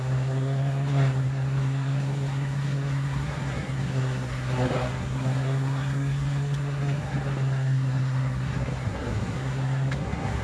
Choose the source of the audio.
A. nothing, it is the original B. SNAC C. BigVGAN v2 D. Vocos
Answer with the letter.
B